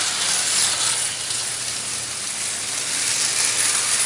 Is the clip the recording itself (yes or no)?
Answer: yes